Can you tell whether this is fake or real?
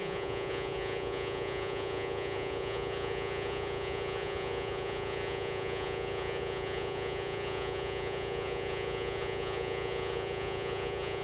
fake